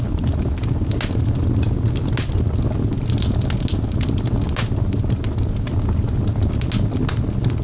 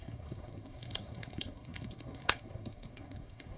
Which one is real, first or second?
first